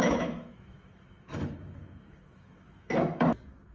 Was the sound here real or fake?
fake